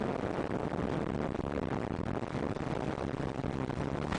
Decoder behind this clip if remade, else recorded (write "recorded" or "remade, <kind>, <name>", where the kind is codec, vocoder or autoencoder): recorded